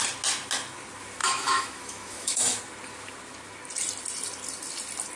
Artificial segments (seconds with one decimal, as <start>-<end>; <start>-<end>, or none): 1.2-2.6